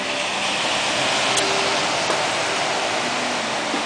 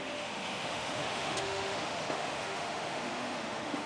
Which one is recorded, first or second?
first